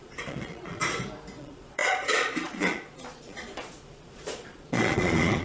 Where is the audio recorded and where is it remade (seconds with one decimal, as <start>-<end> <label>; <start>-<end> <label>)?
0.0-0.8 remade; 0.8-1.4 recorded; 1.4-5.4 remade